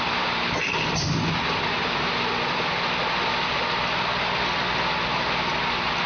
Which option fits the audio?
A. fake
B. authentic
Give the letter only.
B